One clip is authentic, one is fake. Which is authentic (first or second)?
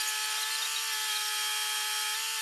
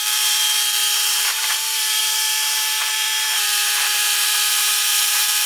first